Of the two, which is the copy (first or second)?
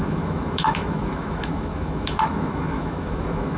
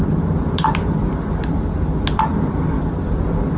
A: first